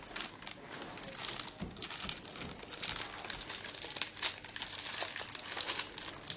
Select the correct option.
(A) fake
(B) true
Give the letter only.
B